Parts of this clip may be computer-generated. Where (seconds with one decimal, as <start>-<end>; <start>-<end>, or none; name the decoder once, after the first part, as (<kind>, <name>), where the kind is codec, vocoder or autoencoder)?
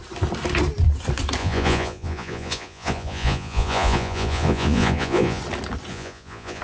1.4-5.4 (vocoder, Vocos); 5.9-6.6